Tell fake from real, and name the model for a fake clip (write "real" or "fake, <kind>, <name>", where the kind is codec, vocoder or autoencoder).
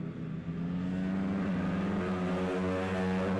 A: real